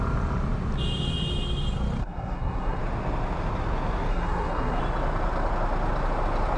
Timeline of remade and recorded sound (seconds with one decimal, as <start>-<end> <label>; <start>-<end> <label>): 0.0-2.0 recorded; 2.0-2.8 remade; 2.8-4.1 recorded; 4.1-4.8 remade; 4.8-6.6 recorded